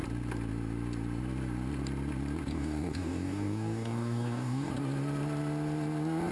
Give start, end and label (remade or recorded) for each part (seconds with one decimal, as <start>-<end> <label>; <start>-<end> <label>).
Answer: 0.0-2.5 recorded; 2.5-4.7 remade; 4.7-6.3 recorded